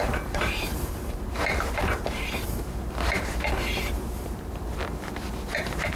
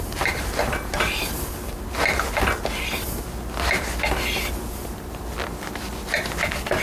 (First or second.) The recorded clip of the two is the second